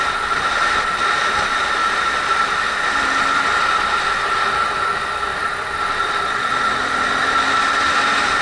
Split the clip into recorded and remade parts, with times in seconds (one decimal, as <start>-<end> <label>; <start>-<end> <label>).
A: 0.0-5.3 recorded; 5.3-7.7 remade; 7.7-8.4 recorded